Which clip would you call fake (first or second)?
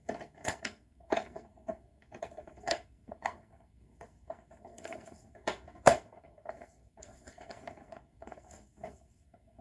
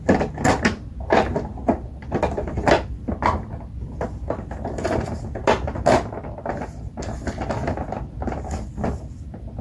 first